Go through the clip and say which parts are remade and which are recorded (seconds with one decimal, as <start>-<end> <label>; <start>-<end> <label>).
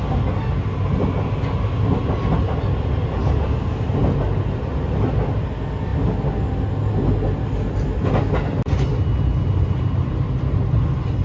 0.0-11.2 recorded